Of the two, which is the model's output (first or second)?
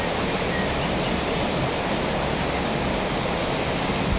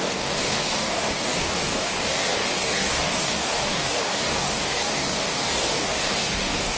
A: second